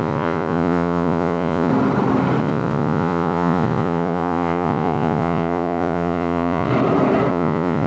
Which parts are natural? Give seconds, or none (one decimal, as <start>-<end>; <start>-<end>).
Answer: 1.7-2.4; 6.7-7.3